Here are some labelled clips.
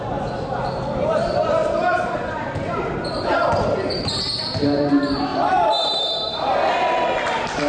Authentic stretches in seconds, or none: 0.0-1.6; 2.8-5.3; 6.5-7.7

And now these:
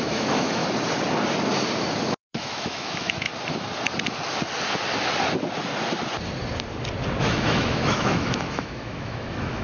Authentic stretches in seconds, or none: 0.6-2.0; 3.3-7.2

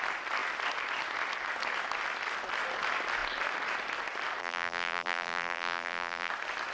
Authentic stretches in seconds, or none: 0.0-4.4; 6.3-6.7

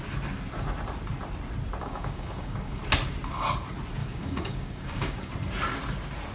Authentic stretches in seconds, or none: 0.0-1.8; 2.8-4.0; 5.3-6.3

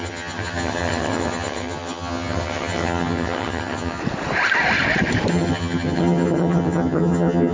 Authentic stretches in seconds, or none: 4.0-5.3

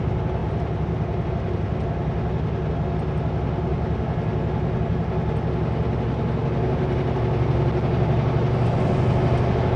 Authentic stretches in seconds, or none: 0.0-0.4; 1.3-9.8

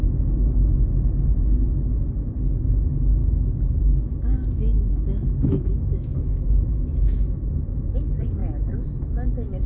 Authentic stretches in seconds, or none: 0.0-3.2; 7.5-9.7

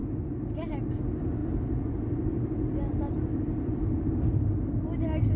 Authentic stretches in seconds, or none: 0.0-1.4; 4.1-5.4